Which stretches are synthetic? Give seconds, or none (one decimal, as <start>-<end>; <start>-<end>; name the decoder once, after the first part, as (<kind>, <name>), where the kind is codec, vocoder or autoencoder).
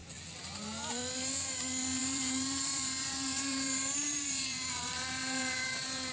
2.0-6.1 (vocoder, BigVGAN v2)